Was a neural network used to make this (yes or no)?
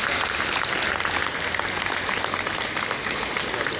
no